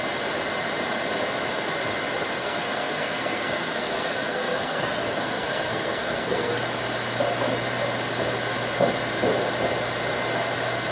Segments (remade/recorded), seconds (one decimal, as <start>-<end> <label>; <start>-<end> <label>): 0.0-2.4 recorded; 2.4-6.5 remade; 6.5-10.9 recorded